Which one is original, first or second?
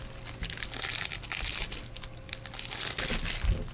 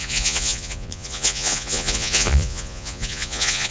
first